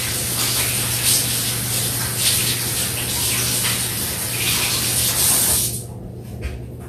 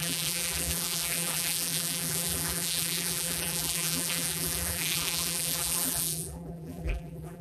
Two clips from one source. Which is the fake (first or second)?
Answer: second